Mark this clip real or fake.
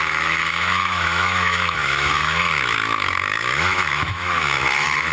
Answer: fake